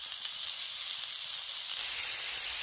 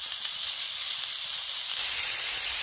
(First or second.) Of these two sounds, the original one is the first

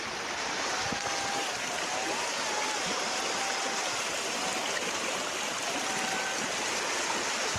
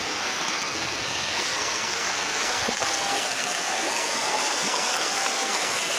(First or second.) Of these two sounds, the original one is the first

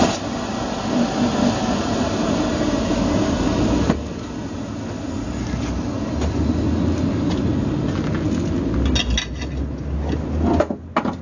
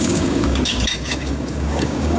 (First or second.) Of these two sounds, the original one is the first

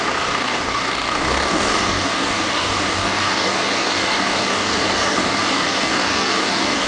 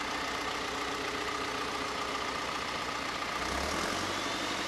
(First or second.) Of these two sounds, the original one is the second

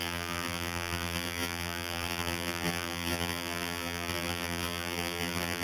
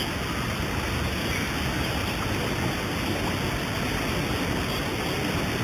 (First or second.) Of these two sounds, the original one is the second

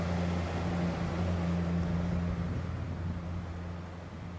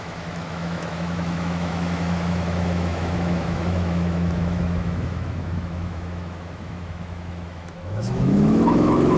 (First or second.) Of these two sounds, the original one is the first